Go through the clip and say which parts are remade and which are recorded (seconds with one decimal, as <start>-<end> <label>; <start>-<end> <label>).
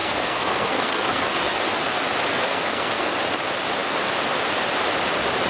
0.0-1.6 remade; 1.6-2.3 recorded; 2.3-3.1 remade; 3.1-5.5 recorded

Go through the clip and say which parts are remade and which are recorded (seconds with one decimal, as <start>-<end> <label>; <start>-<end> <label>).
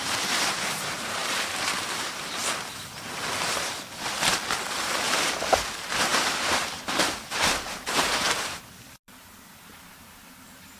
0.0-2.4 remade; 2.4-4.6 recorded; 4.6-10.8 remade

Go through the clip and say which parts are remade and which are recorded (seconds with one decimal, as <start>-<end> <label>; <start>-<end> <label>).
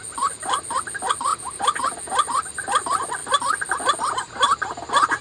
0.0-1.3 recorded; 1.3-2.1 remade; 2.1-5.2 recorded